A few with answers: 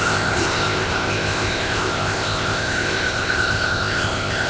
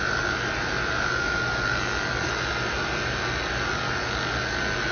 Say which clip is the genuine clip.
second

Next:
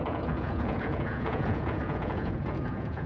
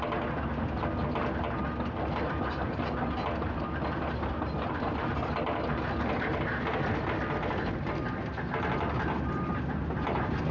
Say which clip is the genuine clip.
second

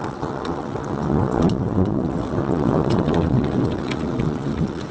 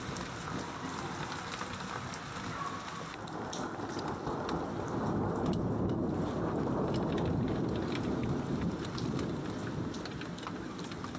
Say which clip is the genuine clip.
second